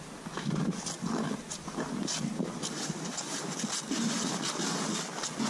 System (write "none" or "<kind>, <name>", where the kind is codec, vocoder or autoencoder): none